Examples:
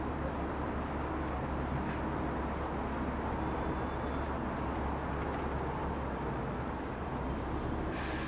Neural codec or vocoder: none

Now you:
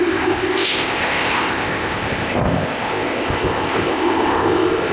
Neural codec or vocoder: codec, ZipCodec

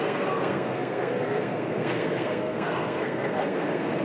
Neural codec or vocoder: codec, SNAC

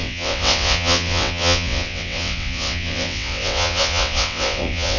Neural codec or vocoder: vocoder, WaveNeXt